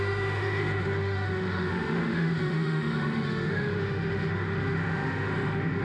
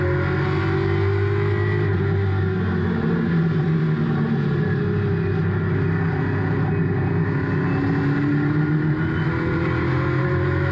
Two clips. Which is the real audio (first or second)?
second